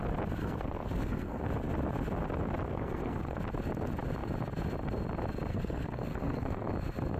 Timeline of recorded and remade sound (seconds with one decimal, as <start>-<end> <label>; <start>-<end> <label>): 0.0-0.4 recorded; 0.4-1.4 remade; 1.4-2.7 recorded; 2.7-3.4 remade; 3.4-5.5 recorded; 5.5-6.7 remade; 6.7-7.2 recorded